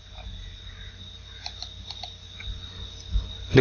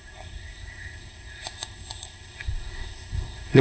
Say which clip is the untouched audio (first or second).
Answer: first